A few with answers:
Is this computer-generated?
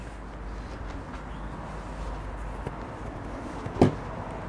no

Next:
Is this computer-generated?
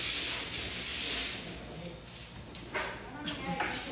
no